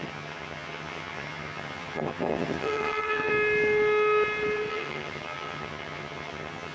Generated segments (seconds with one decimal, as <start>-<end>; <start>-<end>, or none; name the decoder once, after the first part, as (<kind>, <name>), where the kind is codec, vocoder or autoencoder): 0.0-3.3 (vocoder, HiFi-GAN); 4.7-6.7